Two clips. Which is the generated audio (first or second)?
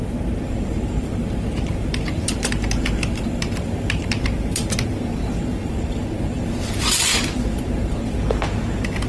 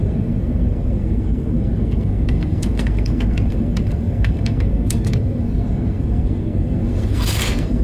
second